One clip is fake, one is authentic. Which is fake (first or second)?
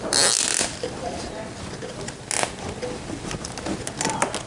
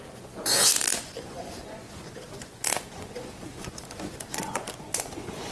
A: second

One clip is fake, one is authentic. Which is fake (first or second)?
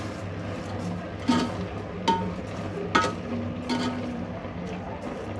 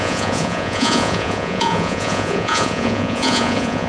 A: second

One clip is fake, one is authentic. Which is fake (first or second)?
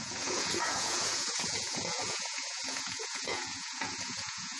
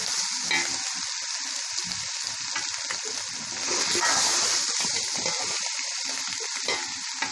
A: first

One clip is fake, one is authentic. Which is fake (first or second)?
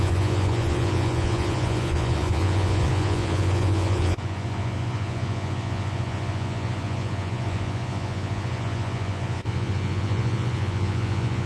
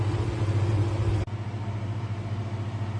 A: first